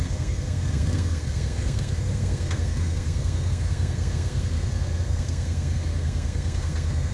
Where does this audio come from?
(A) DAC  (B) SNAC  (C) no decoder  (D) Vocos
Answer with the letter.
B